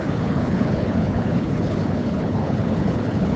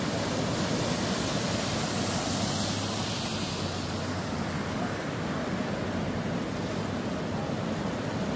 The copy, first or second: first